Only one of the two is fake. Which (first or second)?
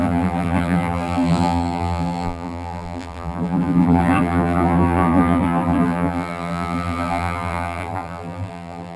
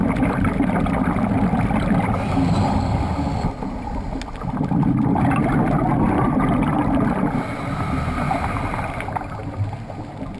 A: first